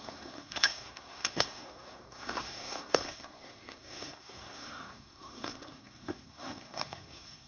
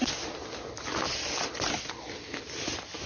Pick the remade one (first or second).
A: first